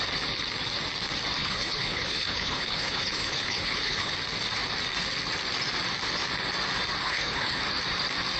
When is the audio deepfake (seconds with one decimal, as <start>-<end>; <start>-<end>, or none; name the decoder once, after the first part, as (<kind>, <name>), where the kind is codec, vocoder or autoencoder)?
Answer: 1.4-4.1 (codec, HILCodec); 7.0-7.6